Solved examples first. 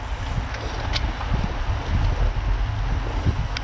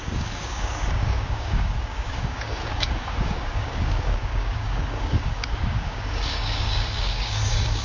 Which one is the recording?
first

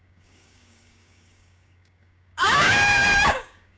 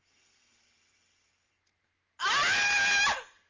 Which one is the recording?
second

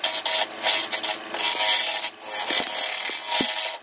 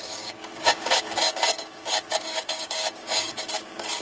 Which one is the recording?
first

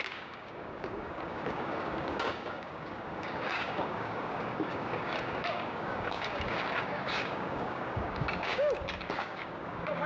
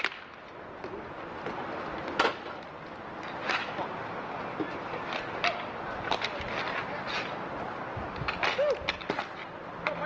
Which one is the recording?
second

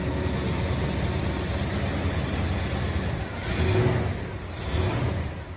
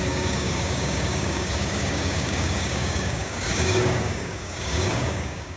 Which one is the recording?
first